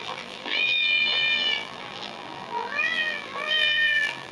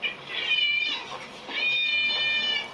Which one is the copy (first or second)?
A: first